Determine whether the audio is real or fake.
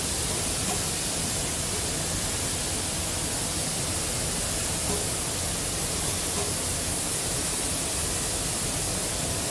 real